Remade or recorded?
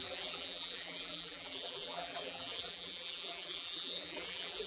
remade